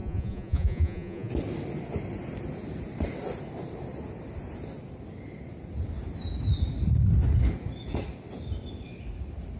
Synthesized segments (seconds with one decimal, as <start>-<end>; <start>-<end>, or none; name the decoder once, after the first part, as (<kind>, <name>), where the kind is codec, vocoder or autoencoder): 0.0-1.3 (vocoder, Vocos)